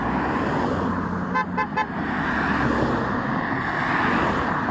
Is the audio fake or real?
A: real